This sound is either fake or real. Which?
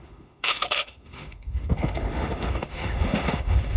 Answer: fake